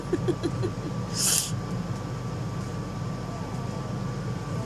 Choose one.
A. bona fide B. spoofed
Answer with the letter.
A